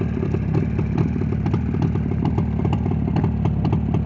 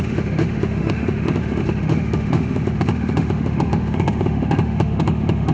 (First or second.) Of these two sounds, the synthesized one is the second